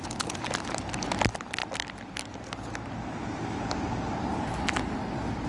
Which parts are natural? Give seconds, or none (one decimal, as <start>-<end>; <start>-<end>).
0.0-5.5